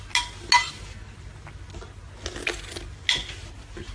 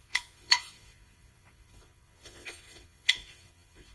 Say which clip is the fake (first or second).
second